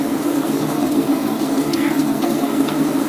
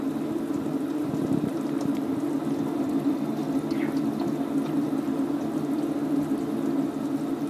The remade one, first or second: first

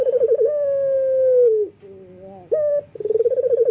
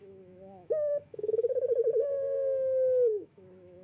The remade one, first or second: second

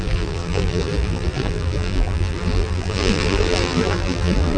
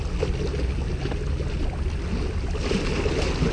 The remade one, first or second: first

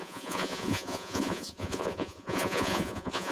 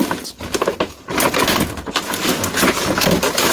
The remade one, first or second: first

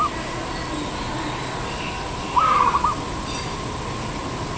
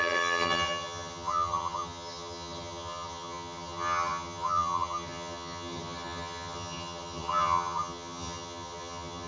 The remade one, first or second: second